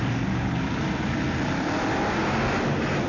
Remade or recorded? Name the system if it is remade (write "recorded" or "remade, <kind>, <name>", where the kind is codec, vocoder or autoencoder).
recorded